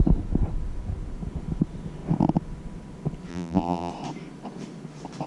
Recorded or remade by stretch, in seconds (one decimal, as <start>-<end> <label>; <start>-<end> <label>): 0.0-3.3 recorded; 3.3-3.9 remade; 3.9-5.3 recorded